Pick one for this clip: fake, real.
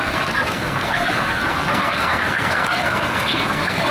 fake